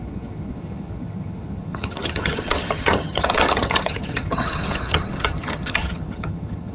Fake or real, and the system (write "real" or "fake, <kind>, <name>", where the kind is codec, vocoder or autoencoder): fake, vocoder, HiFi-GAN